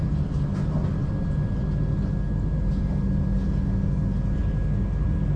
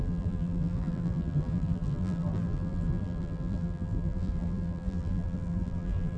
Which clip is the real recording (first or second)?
first